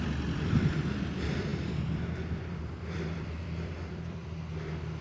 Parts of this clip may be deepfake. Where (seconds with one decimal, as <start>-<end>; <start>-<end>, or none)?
0.0-4.2

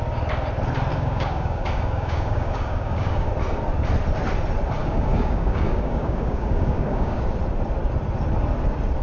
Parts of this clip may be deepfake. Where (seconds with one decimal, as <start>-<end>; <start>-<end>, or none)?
0.9-3.3; 4.8-7.2

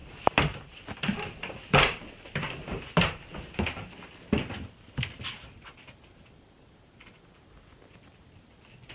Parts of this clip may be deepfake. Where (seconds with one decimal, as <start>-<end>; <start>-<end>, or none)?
none

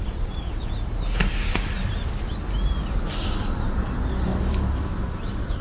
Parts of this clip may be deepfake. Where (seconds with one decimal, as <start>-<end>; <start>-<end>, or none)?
0.0-1.8; 4.4-5.6

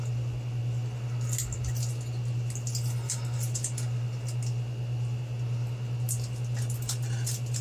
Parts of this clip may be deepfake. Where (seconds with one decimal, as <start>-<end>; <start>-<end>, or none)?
none